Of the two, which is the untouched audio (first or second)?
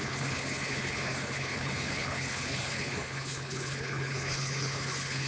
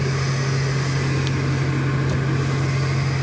second